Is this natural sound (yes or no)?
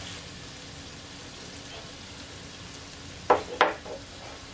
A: yes